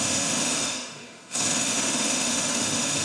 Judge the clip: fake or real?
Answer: fake